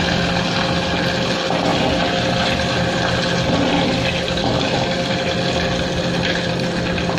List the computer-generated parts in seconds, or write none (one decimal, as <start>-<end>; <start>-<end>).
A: none